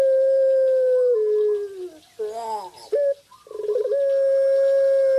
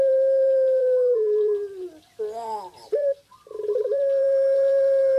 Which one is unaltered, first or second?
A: first